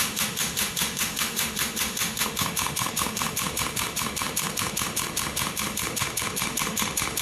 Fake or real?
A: fake